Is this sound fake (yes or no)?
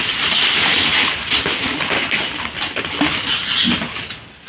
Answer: no